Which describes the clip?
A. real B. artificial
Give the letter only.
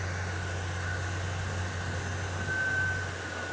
A